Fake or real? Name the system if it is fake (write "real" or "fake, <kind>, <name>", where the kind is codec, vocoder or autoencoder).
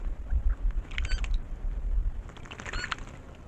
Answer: real